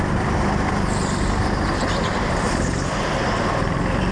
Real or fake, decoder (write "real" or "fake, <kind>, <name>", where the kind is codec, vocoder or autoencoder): real